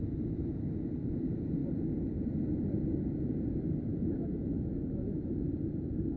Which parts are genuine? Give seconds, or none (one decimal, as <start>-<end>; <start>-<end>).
0.0-3.9; 5.4-6.2